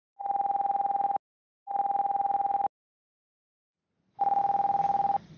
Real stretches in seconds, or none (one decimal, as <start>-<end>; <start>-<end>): 0.0-5.4